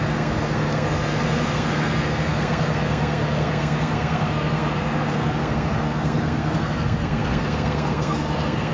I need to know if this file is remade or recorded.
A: remade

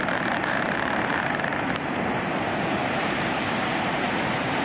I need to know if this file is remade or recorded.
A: remade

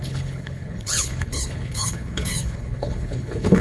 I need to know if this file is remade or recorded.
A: remade